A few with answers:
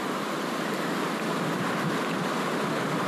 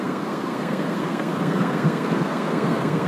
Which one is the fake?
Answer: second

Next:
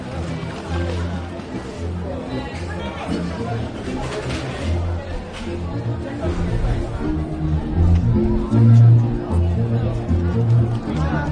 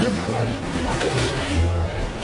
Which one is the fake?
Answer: second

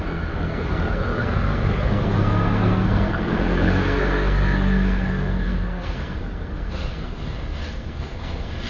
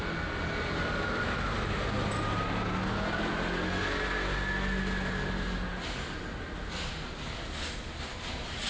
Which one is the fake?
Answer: first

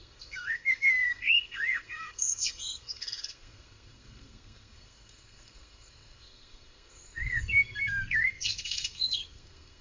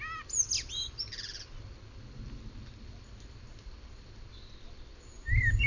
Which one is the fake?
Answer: first